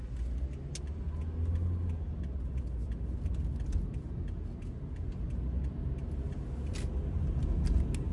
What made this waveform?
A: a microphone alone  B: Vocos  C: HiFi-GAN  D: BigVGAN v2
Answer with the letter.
A